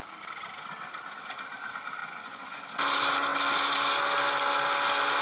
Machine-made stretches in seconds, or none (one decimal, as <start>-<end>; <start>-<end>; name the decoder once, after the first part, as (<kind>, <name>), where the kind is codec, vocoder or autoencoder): 2.0-2.6 (vocoder, Vocos)